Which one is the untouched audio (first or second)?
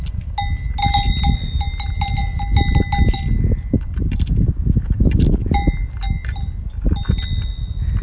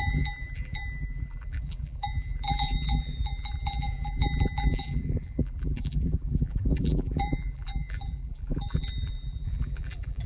first